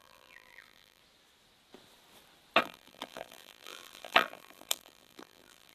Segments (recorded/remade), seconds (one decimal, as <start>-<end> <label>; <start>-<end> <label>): 0.0-1.0 remade; 1.0-2.6 recorded; 2.6-5.7 remade